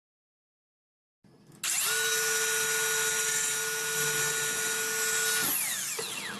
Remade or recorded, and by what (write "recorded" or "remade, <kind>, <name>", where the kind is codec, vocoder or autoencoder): recorded